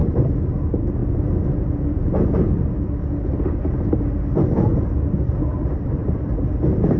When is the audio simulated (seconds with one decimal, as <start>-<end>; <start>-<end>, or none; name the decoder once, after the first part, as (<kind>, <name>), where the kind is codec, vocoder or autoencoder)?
0.0-1.0 (vocoder, BigVGAN v2); 5.2-7.0